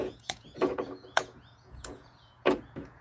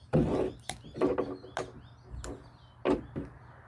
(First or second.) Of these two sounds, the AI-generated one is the first